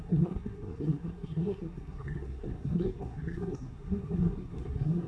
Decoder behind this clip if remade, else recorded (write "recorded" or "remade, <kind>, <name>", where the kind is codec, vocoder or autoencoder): remade, codec, SNAC